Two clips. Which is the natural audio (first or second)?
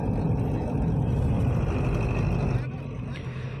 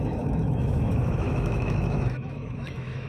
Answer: first